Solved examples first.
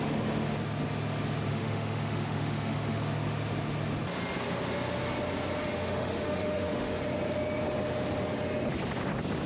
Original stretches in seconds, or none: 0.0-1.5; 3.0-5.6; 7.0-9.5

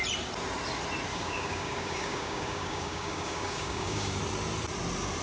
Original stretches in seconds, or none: 0.0-1.1; 4.2-5.2

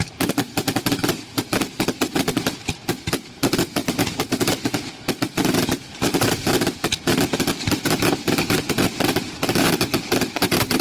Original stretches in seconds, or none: 3.8-4.9

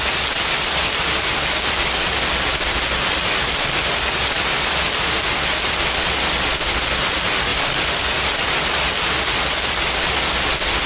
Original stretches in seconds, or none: 0.0-10.9

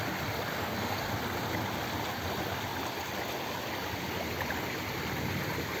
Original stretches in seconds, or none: 0.0-0.5; 1.1-5.8

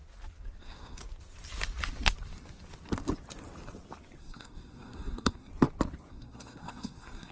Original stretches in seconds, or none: 0.0-0.6; 1.0-4.2; 5.5-6.1